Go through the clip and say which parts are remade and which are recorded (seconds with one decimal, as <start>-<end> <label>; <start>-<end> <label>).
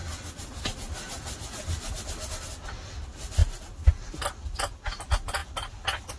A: 0.0-5.4 recorded; 5.4-6.2 remade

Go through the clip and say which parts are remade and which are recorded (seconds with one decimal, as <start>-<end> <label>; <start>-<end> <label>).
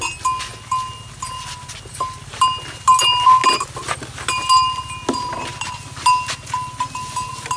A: 0.0-7.6 recorded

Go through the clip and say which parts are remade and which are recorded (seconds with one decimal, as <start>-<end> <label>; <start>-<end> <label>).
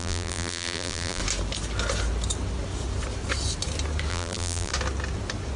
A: 0.0-1.2 remade; 1.2-4.1 recorded; 4.1-4.7 remade; 4.7-5.6 recorded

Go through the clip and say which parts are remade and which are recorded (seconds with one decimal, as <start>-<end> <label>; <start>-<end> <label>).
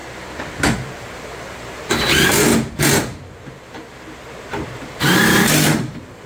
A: 0.0-2.5 remade; 2.5-5.0 recorded; 5.0-6.3 remade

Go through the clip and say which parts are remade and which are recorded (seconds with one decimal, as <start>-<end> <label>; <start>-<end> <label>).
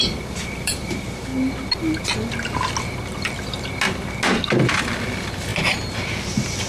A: 0.0-1.3 remade; 1.3-4.8 recorded; 4.8-6.7 remade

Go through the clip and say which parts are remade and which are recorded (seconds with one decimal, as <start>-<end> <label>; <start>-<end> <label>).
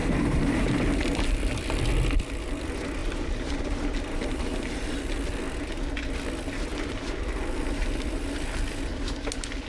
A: 0.0-0.7 remade; 0.7-3.0 recorded; 3.0-4.9 remade; 4.9-9.7 recorded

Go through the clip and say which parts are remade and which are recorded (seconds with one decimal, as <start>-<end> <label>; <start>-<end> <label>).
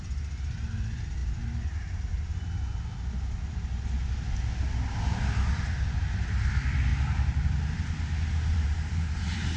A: 0.0-6.9 recorded; 6.9-7.5 remade; 7.5-8.5 recorded; 8.5-9.6 remade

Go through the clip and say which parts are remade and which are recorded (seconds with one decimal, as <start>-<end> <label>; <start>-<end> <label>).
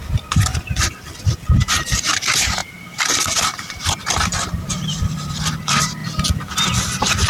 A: 0.0-0.5 remade; 0.5-1.2 recorded; 1.2-6.0 remade; 6.0-7.3 recorded